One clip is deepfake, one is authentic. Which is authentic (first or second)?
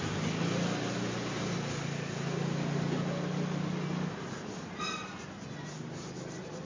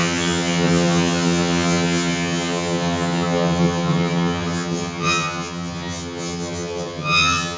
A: first